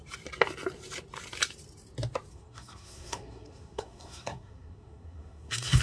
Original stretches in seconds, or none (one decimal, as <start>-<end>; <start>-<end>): 0.0-2.3